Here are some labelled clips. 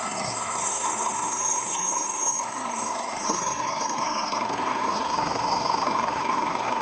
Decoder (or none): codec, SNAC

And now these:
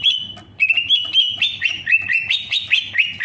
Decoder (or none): none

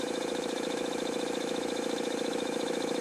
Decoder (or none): autoencoder, DAC-VAE